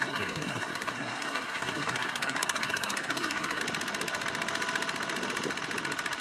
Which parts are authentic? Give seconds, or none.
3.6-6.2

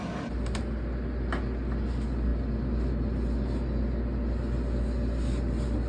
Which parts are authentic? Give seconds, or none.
0.0-5.9

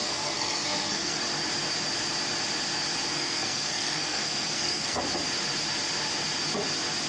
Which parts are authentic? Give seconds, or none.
1.2-3.1; 5.0-7.1